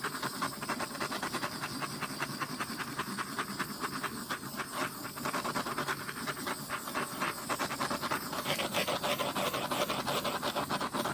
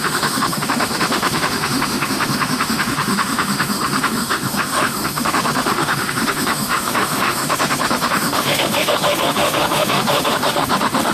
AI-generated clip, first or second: second